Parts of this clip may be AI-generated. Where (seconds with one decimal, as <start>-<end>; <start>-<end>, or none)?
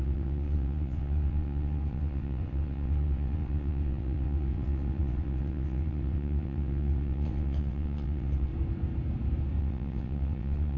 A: 0.0-8.5; 9.6-10.8